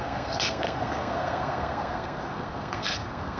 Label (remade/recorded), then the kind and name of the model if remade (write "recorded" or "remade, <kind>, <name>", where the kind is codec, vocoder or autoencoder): remade, codec, SNAC